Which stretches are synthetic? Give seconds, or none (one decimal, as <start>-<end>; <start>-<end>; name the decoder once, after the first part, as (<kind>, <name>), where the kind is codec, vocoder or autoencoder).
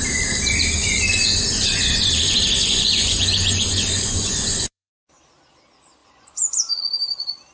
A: 0.8-2.1 (vocoder, Vocos); 2.6-4.9; 6.0-6.8